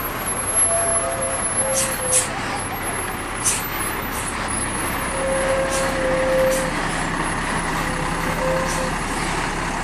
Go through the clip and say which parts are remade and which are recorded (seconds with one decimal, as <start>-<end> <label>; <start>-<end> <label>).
0.0-9.8 recorded